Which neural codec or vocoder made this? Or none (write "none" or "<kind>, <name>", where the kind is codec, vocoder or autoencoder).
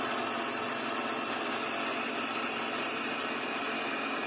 none